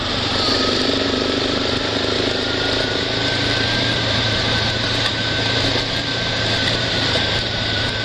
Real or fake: fake